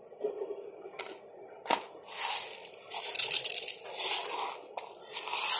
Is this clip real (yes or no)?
yes